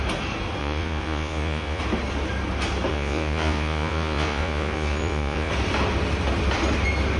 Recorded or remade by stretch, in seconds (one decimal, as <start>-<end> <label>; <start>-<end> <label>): 0.0-0.6 recorded; 0.6-1.8 remade; 1.8-2.9 recorded; 2.9-5.5 remade; 5.5-7.2 recorded